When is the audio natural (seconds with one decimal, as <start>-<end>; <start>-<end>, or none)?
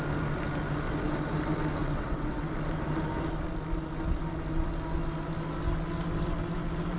0.0-1.8; 2.5-7.0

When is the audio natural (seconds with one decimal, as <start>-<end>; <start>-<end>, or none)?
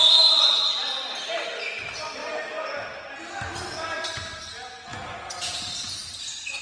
0.0-6.6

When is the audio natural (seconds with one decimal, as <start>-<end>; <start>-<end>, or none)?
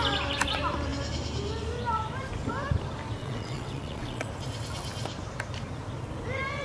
0.0-3.2; 4.3-6.6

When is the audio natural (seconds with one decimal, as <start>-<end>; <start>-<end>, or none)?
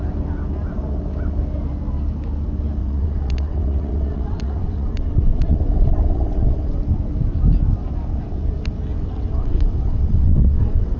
0.0-2.8; 6.8-8.9